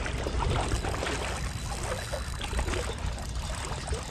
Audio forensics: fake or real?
real